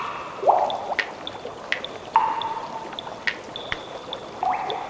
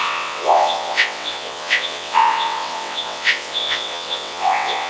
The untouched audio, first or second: first